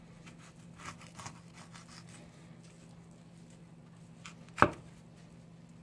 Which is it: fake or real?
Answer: real